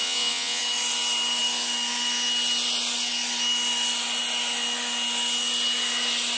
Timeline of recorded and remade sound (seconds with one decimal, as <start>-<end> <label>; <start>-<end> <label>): 0.0-0.6 remade; 0.6-6.4 recorded